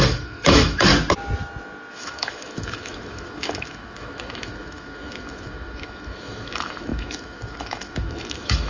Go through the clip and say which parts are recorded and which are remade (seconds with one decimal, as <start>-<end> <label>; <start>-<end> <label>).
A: 0.0-0.9 remade; 0.9-1.9 recorded; 1.9-8.7 remade